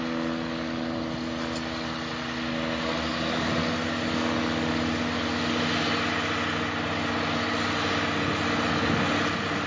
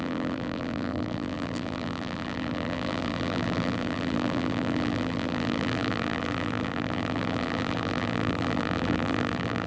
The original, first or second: first